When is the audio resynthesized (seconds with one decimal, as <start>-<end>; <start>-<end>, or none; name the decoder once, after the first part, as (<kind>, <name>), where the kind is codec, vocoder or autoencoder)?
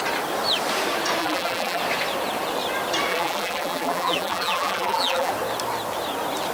1.2-1.8 (vocoder, BigVGAN v2); 3.1-5.3